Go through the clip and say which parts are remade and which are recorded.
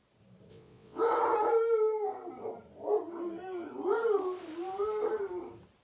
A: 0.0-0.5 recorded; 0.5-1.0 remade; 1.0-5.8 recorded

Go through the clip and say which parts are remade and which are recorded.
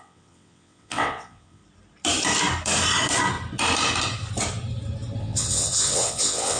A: 0.0-1.6 remade; 1.6-5.2 recorded; 5.2-6.6 remade